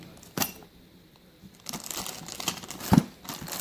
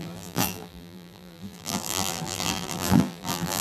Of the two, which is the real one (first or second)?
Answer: first